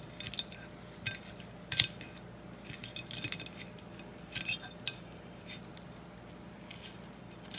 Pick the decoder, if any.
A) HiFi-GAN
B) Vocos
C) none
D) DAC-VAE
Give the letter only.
C